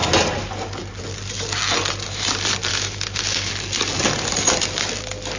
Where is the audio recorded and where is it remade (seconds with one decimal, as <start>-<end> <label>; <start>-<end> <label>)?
0.0-2.7 recorded; 2.7-3.5 remade; 3.5-5.4 recorded